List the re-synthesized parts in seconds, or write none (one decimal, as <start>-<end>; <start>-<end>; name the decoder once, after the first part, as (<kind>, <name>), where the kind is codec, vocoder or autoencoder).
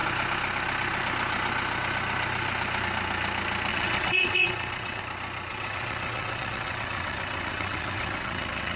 3.7-5.0 (vocoder, WaveNeXt); 5.5-8.8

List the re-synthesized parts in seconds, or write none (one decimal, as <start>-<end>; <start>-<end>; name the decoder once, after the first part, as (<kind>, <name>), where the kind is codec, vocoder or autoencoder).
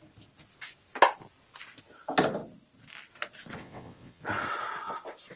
3.6-4.2 (vocoder, WaveNeXt)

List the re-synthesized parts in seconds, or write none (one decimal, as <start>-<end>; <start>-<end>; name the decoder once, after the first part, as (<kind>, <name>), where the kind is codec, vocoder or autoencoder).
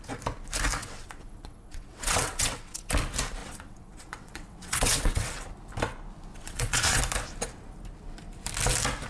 0.8-2.9 (vocoder, WaveNeXt); 3.4-5.5; 6.3-7.0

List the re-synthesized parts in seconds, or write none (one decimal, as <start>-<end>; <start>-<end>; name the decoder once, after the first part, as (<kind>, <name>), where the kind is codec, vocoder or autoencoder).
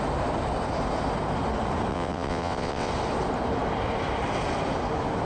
1.9-2.9 (vocoder, WaveNeXt)